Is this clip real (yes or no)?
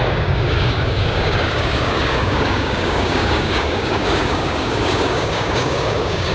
no